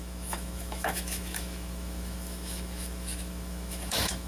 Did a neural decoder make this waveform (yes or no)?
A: yes